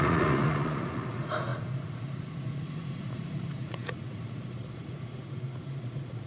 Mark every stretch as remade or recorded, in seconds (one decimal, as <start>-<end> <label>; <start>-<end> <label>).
0.0-6.3 remade